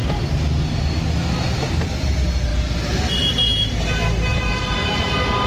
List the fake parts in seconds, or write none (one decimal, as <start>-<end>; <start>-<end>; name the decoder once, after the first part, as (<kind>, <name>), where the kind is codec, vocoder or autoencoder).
4.3-5.1 (vocoder, BigVGAN v2)